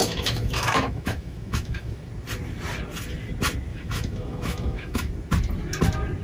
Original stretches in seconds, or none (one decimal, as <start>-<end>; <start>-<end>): 2.1-3.7; 5.1-6.2